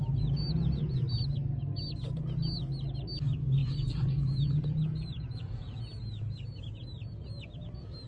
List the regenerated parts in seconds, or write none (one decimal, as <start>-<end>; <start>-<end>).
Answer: 3.6-5.8